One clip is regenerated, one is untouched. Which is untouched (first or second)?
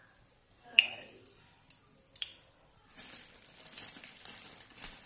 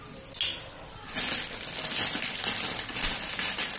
second